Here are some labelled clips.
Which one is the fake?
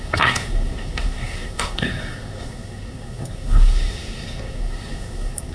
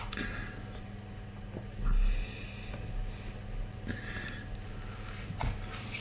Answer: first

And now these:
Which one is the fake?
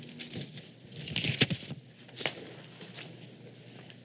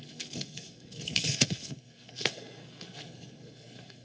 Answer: second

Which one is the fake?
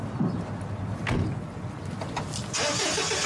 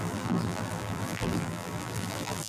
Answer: second